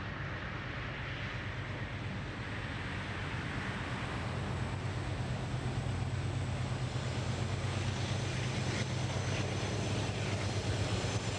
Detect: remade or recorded recorded